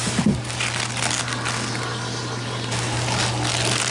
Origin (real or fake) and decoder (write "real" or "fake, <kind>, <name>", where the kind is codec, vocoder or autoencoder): real